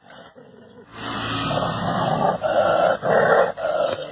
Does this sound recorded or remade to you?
recorded